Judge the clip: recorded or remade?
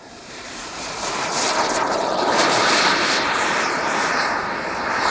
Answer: remade